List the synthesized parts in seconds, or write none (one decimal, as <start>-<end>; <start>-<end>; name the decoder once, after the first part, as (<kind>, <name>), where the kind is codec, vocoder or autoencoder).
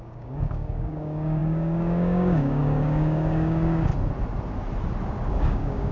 0.0-3.9 (codec, DAC); 5.3-5.9